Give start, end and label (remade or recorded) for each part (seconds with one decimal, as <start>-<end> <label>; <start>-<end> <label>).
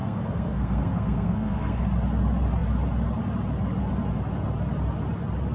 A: 0.0-1.8 remade; 1.8-5.5 recorded